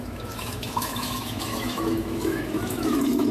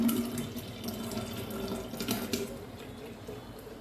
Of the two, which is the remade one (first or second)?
first